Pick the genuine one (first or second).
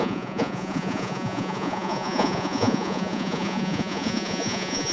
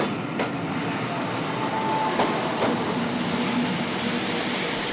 second